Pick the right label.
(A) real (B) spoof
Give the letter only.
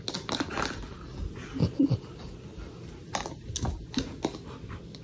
A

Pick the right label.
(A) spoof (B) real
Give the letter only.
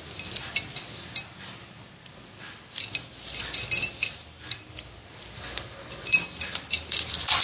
B